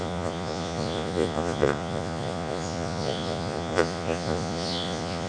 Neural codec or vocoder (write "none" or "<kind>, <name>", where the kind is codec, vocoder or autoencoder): vocoder, Vocos